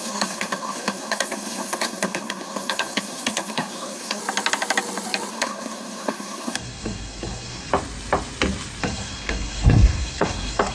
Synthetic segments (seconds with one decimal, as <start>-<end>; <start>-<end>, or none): 0.0-4.2; 5.3-7.7; 8.8-10.7